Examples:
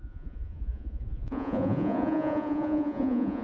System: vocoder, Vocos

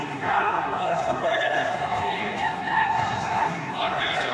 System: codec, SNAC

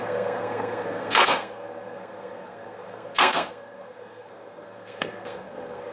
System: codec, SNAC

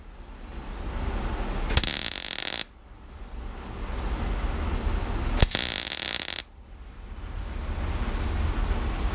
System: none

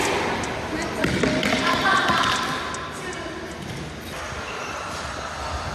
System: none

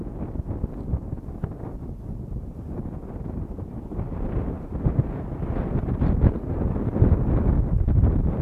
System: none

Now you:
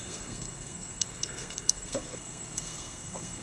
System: codec, SNAC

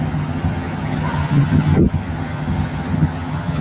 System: vocoder, HiFi-GAN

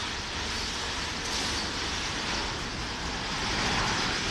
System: none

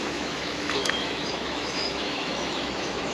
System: autoencoder, DAC-VAE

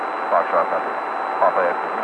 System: none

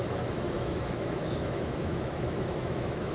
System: autoencoder, DAC-VAE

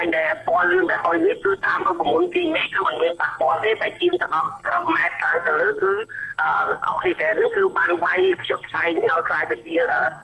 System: codec, SNAC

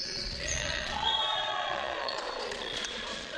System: vocoder, Vocos